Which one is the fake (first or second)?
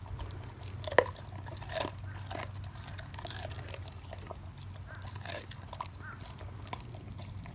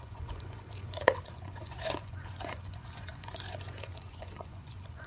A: second